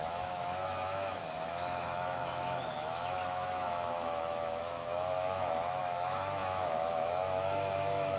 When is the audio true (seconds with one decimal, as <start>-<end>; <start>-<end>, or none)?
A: none